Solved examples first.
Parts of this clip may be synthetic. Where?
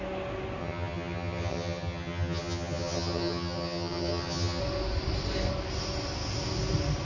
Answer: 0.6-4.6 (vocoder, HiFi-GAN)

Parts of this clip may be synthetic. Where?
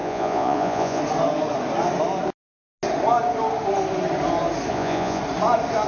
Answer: 0.0-1.0 (vocoder, Vocos); 4.7-5.2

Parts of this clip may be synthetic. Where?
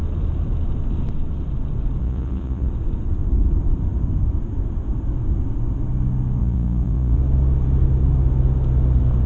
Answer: 2.0-2.7 (vocoder, Vocos); 6.4-7.2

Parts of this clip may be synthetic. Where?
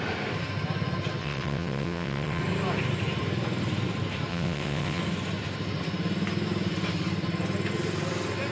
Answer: 1.2-2.4 (vocoder, WaveNeXt); 4.3-5.0